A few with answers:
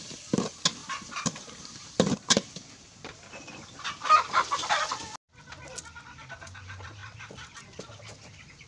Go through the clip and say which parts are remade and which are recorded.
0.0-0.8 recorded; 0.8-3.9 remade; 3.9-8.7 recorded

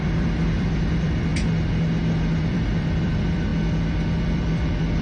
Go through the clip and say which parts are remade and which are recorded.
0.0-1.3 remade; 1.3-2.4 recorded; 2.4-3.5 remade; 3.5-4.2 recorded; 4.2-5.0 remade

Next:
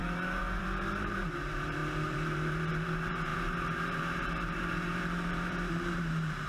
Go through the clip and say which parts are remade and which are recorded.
0.0-6.5 remade

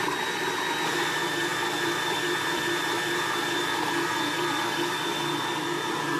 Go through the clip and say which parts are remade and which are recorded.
0.0-6.2 remade

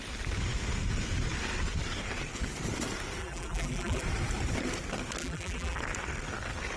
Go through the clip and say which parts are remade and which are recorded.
0.0-3.2 recorded; 3.2-4.0 remade; 4.0-5.2 recorded; 5.2-5.8 remade; 5.8-6.8 recorded

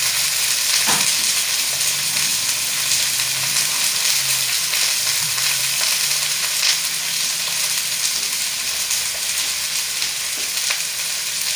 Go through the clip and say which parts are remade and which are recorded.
0.0-5.1 recorded; 5.1-5.8 remade; 5.8-11.6 recorded

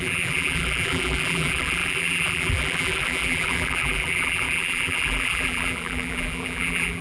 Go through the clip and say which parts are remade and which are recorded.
0.0-7.0 remade

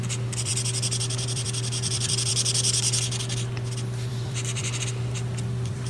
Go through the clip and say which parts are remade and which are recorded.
0.0-0.5 remade; 0.5-1.0 recorded; 1.0-2.3 remade; 2.3-4.1 recorded; 4.1-5.9 remade